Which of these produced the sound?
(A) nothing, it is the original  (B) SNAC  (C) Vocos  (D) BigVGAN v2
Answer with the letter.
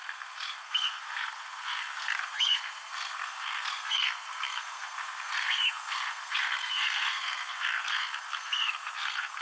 B